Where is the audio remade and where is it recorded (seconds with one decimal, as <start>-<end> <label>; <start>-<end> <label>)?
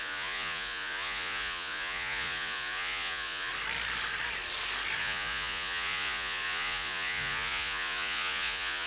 0.0-3.5 remade; 3.5-5.0 recorded; 5.0-8.9 remade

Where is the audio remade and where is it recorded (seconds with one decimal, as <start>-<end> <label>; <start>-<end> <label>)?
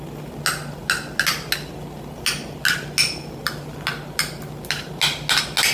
0.0-5.7 recorded